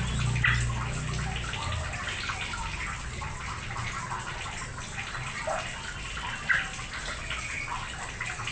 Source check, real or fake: real